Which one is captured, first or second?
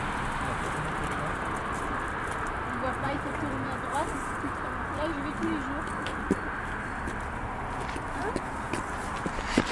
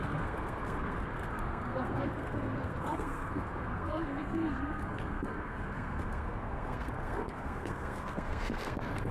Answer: first